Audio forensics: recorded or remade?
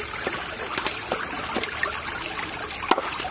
recorded